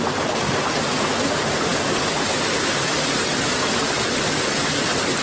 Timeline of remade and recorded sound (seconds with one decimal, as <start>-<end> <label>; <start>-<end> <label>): 0.0-5.2 recorded